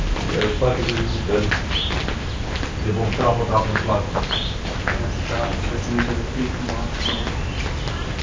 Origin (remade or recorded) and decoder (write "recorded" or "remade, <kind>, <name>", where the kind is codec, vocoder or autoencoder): recorded